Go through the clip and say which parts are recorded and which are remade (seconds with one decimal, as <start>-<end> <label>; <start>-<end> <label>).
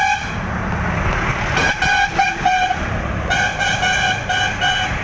0.0-1.3 recorded; 1.3-4.3 remade; 4.3-5.0 recorded